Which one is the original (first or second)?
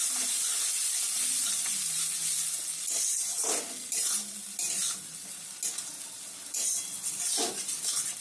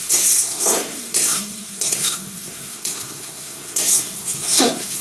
first